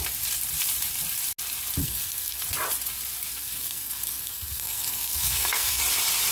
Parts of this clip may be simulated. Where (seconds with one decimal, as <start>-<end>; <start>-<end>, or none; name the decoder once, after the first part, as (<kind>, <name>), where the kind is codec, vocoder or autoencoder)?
1.8-2.4 (codec, SNAC); 3.3-5.8